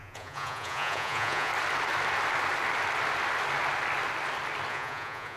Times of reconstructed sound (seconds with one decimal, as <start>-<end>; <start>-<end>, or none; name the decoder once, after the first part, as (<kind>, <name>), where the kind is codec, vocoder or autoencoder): 0.0-1.5 (vocoder, Vocos); 4.7-5.4